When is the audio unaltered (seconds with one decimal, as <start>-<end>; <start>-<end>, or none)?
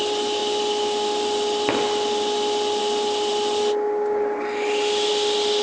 0.0-5.6